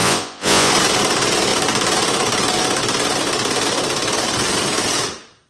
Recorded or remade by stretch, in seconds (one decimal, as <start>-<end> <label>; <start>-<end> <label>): 0.0-0.7 remade; 0.7-5.5 recorded